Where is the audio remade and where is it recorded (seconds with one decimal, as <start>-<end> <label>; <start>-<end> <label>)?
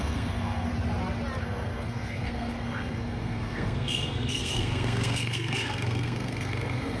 0.0-0.7 remade; 0.7-1.4 recorded; 1.4-7.0 remade